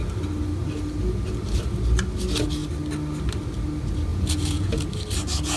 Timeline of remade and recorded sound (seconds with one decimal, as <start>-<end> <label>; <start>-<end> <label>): 0.0-4.1 recorded; 4.1-4.7 remade; 4.7-5.6 recorded